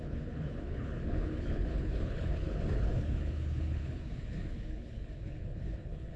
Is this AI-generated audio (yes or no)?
yes